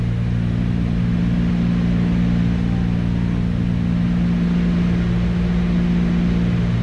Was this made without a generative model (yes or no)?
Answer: yes